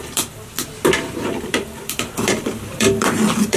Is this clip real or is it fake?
fake